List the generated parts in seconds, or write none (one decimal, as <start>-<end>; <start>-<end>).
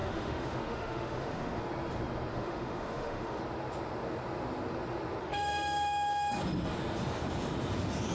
0.0-1.6; 2.3-3.4; 5.2-6.3